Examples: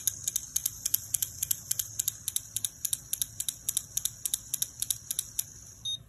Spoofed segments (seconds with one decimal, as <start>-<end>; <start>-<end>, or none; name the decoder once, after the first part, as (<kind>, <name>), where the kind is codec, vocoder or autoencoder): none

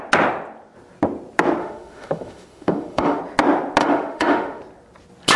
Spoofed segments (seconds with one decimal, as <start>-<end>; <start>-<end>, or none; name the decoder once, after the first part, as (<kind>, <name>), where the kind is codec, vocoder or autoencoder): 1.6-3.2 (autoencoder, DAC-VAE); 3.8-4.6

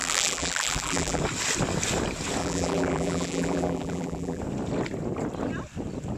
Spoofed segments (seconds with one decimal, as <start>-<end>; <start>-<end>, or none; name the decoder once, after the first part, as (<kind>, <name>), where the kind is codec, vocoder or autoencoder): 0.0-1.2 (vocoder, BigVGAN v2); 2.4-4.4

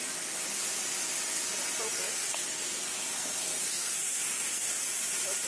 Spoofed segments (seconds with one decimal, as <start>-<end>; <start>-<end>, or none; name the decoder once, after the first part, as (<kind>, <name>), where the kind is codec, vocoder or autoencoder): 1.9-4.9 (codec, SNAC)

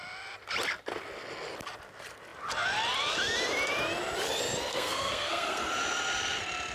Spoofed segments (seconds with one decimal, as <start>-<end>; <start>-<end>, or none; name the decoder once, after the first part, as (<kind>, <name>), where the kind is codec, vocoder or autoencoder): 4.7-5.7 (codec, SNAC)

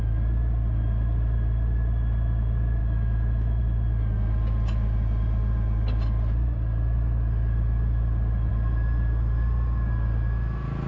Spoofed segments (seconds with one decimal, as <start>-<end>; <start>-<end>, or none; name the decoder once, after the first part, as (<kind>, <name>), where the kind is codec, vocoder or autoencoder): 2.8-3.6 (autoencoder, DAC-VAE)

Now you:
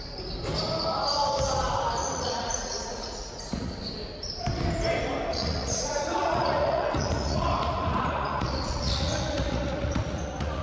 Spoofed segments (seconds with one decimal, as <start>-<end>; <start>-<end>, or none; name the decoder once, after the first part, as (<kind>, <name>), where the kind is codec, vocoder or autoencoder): 2.0-3.8 (vocoder, Vocos); 5.3-10.6

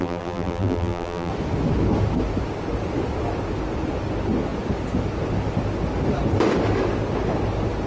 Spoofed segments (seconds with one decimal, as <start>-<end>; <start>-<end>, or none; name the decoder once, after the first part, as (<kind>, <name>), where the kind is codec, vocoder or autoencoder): 0.0-1.3 (vocoder, BigVGAN v2)